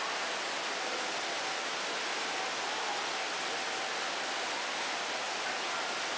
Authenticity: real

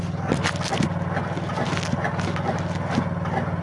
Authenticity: real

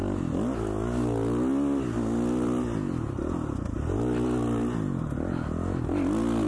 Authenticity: real